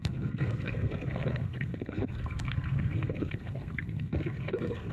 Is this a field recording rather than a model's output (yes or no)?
no